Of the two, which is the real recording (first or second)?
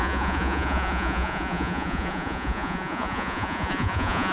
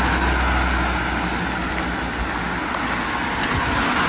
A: second